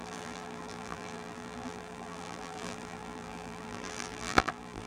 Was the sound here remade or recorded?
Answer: remade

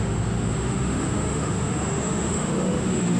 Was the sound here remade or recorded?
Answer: remade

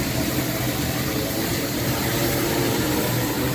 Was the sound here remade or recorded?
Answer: remade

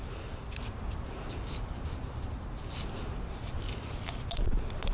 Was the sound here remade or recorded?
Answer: recorded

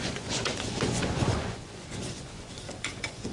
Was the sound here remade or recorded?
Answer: remade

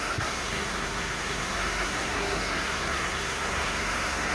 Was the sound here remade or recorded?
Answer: remade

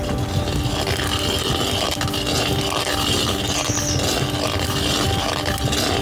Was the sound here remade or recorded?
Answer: recorded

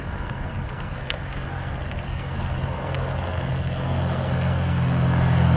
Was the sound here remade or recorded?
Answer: remade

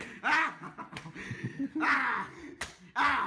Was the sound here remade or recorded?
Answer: recorded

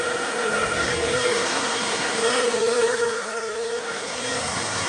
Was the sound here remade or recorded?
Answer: remade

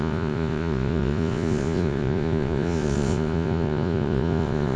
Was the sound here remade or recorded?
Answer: remade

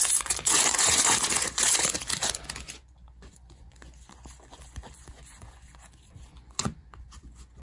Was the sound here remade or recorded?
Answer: remade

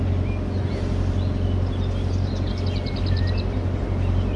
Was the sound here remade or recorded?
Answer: recorded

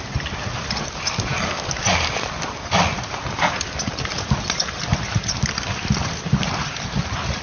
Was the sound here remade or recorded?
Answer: recorded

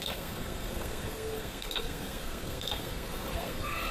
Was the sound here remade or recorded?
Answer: remade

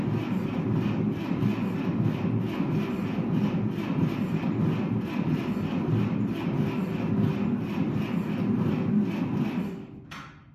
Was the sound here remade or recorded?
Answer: recorded